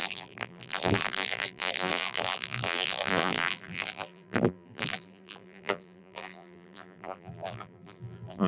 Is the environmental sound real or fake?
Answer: fake